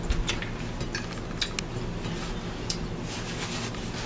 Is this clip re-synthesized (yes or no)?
no